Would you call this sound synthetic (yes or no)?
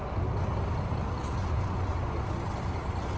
no